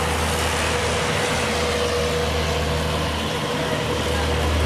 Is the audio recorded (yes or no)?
yes